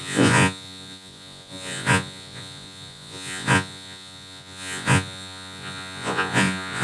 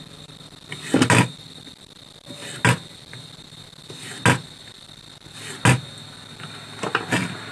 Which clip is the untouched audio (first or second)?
second